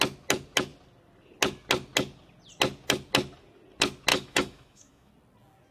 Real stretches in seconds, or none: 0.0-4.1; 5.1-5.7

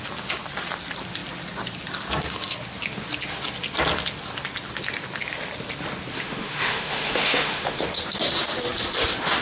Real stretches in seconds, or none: 0.0-6.1; 7.8-9.4

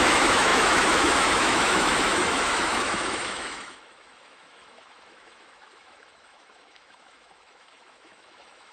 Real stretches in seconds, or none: none

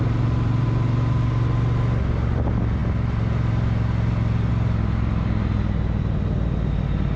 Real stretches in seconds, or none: 0.0-7.2

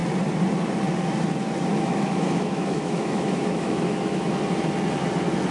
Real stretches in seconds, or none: 0.0-1.7; 4.3-5.5

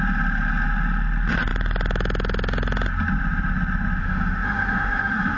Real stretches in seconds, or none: 0.0-4.0